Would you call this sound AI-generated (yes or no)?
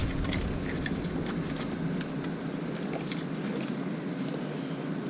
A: no